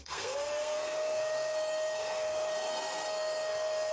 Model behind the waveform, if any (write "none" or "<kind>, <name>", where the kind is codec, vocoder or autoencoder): codec, SNAC